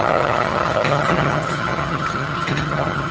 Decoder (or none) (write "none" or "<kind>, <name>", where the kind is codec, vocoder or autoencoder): vocoder, HiFi-GAN